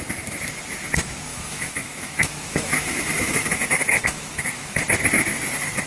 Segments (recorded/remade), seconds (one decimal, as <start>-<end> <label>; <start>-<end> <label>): 0.0-1.3 recorded; 1.3-4.8 remade; 4.8-5.9 recorded